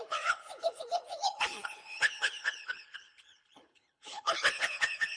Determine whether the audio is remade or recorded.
remade